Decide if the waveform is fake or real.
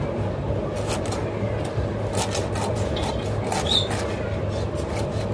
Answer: real